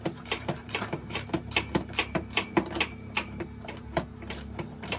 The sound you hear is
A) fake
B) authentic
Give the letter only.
A